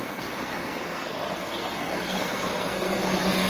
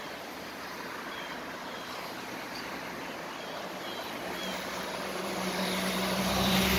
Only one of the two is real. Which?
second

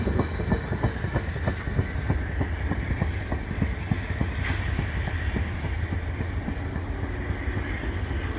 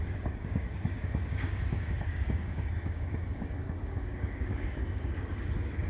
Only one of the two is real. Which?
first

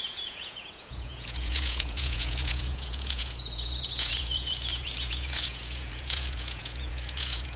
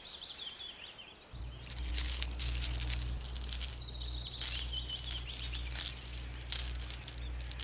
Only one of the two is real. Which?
second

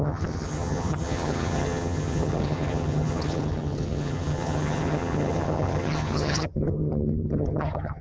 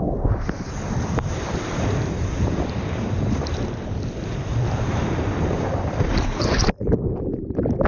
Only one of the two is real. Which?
second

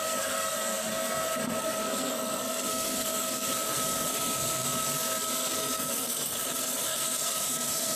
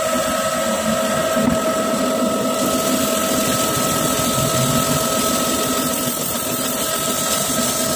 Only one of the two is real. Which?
second